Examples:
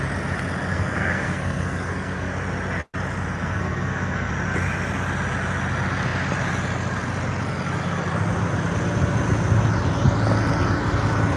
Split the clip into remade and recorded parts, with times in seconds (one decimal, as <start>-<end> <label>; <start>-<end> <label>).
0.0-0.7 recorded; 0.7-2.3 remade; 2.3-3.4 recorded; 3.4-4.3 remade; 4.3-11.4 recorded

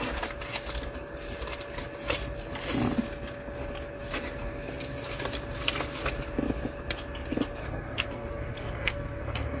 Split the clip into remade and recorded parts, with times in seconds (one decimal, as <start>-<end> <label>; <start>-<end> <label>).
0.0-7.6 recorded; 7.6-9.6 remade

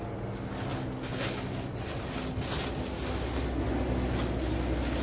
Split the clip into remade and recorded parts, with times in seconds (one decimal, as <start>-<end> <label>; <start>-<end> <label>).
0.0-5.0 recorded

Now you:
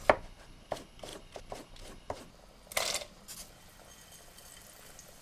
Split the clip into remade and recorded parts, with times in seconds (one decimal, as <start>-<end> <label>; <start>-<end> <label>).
0.0-5.2 recorded

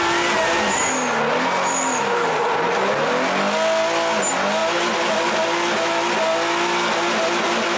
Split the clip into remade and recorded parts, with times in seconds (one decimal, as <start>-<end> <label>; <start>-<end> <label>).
0.0-7.8 recorded

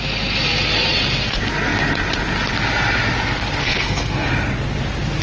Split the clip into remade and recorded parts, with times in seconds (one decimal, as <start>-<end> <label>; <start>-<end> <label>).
0.0-3.6 recorded; 3.6-4.3 remade; 4.3-5.2 recorded

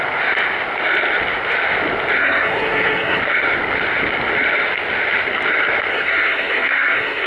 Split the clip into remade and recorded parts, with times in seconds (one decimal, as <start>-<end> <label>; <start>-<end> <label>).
0.0-2.2 recorded; 2.2-3.2 remade; 3.2-5.9 recorded; 5.9-7.3 remade